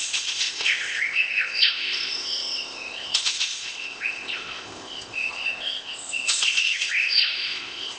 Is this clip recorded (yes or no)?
no